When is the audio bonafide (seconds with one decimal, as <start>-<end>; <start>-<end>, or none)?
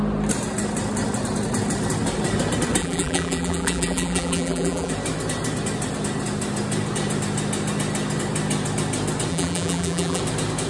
0.0-2.8; 4.9-9.3; 10.2-10.7